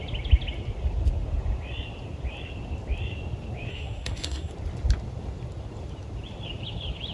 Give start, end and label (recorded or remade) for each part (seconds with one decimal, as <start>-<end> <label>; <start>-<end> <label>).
0.0-3.7 recorded; 3.7-4.5 remade; 4.5-7.1 recorded